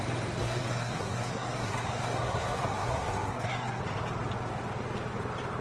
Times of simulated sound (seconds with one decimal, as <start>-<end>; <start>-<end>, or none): 0.4-3.8